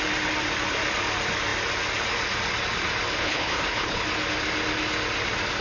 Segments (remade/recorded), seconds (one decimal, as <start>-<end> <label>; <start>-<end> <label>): 0.0-3.2 recorded; 3.2-4.0 remade; 4.0-5.6 recorded